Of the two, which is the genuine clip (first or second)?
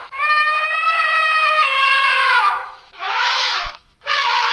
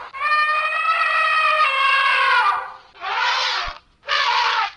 second